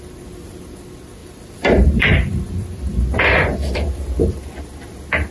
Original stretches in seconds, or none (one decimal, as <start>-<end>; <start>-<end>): 0.0-1.2; 4.4-5.3